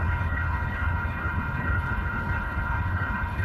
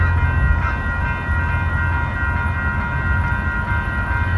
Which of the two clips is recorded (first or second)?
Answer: second